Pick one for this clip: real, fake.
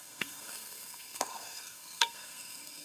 fake